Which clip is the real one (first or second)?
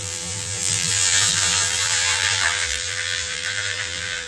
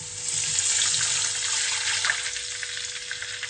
second